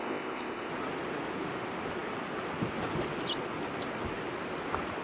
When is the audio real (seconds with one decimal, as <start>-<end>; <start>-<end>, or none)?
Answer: 0.7-5.0